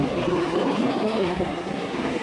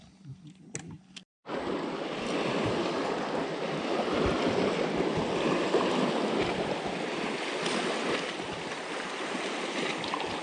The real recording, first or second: second